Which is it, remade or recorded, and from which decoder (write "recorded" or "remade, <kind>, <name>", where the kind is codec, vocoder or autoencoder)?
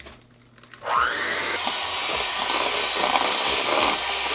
recorded